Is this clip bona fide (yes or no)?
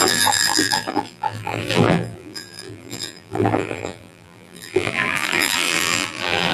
no